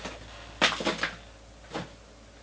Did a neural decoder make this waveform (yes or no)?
no